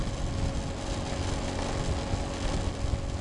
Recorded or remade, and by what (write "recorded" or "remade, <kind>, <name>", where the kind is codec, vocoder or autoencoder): recorded